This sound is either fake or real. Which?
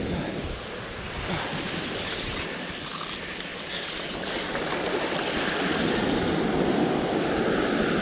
real